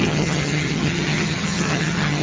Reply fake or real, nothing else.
fake